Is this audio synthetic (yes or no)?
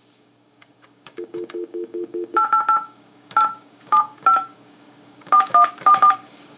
yes